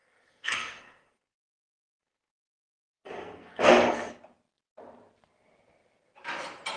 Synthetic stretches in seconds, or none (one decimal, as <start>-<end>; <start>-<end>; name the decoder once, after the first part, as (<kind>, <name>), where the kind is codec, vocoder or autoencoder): 0.0-4.1 (codec, SNAC)